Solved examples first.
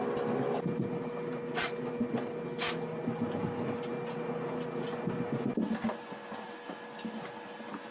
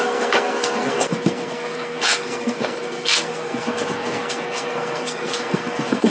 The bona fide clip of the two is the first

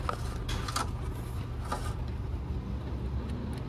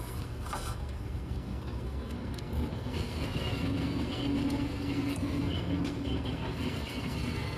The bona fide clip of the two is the first